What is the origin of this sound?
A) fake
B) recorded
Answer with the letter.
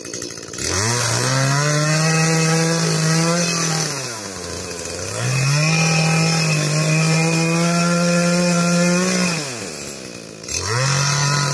B